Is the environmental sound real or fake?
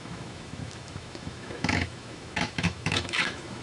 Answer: fake